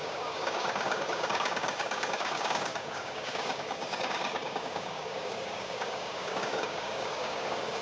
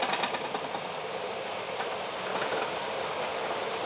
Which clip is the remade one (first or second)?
first